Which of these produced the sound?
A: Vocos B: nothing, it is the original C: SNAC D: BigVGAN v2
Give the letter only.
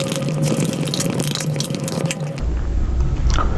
B